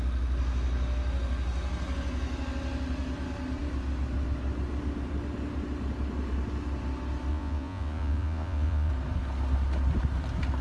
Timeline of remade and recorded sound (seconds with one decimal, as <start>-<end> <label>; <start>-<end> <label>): 0.0-7.3 recorded; 7.3-8.9 remade; 8.9-10.6 recorded

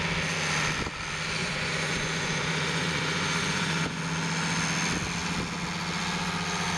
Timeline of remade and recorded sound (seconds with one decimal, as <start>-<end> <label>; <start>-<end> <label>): 0.0-1.4 recorded; 1.4-4.0 remade; 4.0-6.8 recorded

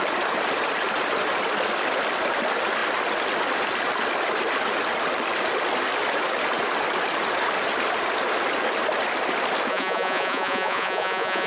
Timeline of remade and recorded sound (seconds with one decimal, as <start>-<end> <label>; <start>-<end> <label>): 0.0-9.7 recorded; 9.7-11.5 remade